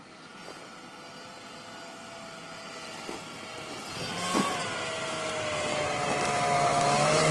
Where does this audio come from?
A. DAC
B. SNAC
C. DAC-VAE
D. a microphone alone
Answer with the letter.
D